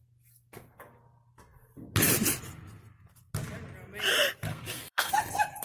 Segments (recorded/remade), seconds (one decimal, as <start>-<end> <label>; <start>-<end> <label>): 0.0-4.5 recorded; 4.5-5.1 remade; 5.1-5.6 recorded